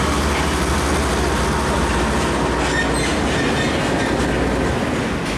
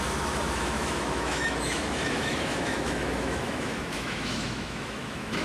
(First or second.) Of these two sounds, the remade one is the second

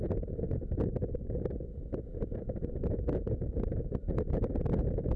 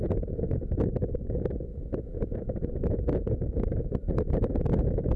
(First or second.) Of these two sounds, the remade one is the second